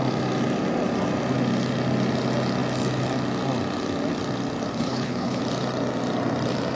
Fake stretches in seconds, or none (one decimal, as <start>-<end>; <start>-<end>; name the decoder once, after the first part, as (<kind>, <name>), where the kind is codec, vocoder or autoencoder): 4.7-5.4 (codec, HILCodec)